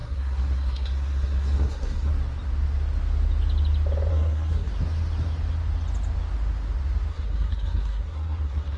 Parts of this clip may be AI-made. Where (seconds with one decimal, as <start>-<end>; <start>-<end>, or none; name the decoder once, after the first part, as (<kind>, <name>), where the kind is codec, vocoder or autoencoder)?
0.0-2.1 (codec, SNAC); 4.1-4.7; 7.1-8.8